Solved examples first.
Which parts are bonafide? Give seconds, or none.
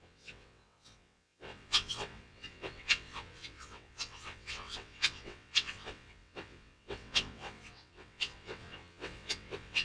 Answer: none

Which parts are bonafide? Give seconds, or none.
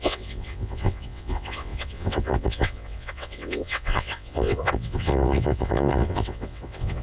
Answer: none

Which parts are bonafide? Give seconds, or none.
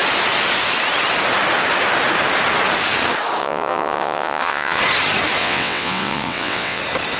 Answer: 0.0-3.4; 4.8-5.4; 6.8-7.2